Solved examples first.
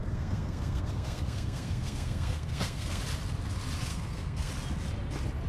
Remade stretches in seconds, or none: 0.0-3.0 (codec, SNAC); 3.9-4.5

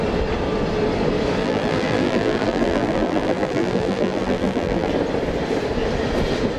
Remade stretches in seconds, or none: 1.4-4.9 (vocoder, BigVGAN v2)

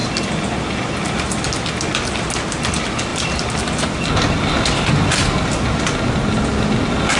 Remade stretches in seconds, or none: none

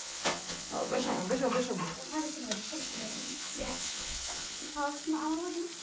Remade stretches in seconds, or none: 0.0-1.2 (vocoder, WaveNeXt); 2.8-4.7

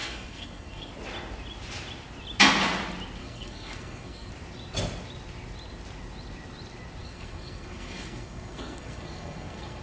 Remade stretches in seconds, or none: 0.0-0.9 (codec, SNAC); 3.2-4.3; 7.0-9.8

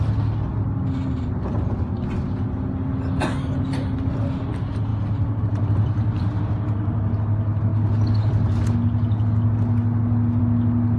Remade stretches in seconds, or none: none

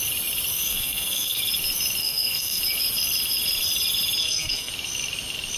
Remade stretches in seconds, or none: 0.5-1.4 (codec, SNAC); 2.0-2.6; 4.2-4.7